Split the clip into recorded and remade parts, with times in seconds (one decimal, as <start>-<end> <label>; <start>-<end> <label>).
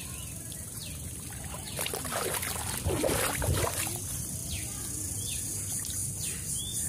0.0-0.8 remade; 0.8-3.4 recorded; 3.4-4.4 remade; 4.4-5.4 recorded; 5.4-6.0 remade; 6.0-6.9 recorded